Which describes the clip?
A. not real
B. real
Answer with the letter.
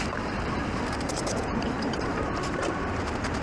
A